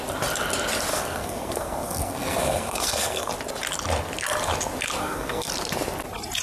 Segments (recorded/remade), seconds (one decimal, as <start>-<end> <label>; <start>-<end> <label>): 0.0-0.9 recorded; 0.9-3.3 remade; 3.3-5.0 recorded; 5.0-5.5 remade; 5.5-6.4 recorded